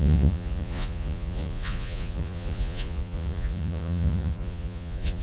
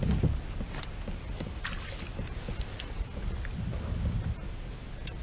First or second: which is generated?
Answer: first